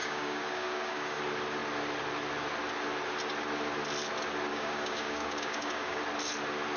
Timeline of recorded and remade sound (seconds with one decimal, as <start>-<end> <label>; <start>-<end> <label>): 0.0-1.2 remade; 1.2-4.5 recorded; 4.5-6.0 remade; 6.0-6.8 recorded